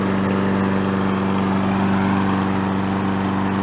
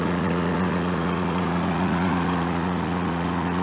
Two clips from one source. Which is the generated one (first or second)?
second